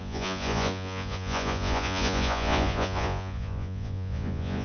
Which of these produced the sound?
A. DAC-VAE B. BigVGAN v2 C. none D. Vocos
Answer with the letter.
D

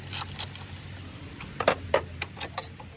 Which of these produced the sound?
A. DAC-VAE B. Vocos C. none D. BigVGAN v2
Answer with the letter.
C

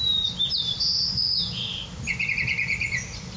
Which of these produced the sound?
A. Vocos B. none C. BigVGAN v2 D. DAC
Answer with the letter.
B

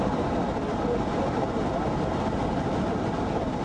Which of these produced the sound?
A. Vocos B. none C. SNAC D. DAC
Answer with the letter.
B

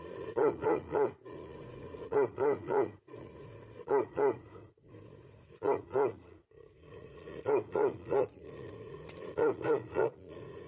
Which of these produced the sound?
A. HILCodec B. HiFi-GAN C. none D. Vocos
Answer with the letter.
D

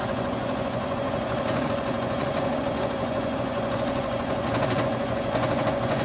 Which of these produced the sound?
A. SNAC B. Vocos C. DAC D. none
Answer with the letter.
B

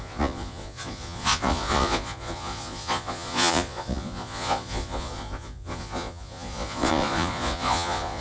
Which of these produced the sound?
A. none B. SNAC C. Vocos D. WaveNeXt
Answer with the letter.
C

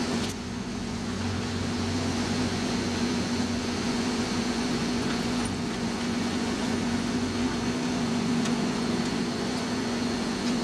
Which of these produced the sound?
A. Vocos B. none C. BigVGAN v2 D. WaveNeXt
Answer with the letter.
A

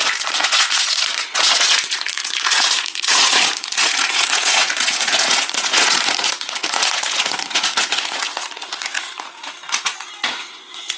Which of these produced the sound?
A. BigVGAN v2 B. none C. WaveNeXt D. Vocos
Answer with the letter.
D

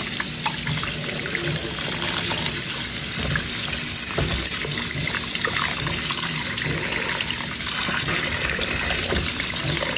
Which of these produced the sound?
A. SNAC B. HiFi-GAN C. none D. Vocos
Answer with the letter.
C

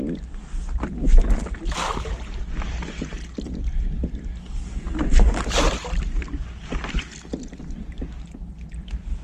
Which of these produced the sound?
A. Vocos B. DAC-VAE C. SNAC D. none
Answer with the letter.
D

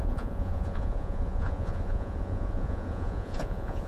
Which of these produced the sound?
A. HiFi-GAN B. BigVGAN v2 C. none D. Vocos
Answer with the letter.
D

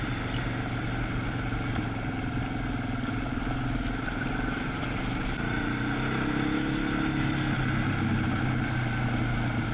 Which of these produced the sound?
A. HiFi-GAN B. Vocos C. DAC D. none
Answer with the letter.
D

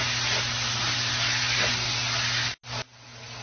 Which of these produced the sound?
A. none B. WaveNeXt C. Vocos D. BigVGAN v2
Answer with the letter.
A